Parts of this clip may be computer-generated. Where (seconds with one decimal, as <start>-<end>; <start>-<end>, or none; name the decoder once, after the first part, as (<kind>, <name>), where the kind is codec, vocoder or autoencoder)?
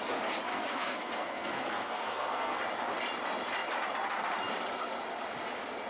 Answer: 0.5-2.6 (codec, SNAC)